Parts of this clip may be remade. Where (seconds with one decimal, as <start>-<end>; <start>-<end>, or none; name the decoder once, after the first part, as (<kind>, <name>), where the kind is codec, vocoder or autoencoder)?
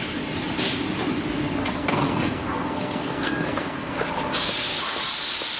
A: 1.6-4.0 (codec, SNAC)